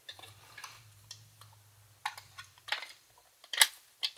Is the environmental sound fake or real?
real